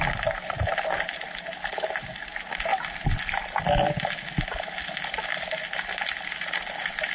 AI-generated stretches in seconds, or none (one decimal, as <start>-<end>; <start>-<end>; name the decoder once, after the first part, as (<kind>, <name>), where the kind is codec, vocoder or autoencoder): none